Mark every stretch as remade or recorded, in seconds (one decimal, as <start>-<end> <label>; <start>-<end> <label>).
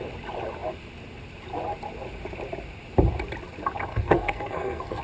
0.0-3.9 recorded; 3.9-5.0 remade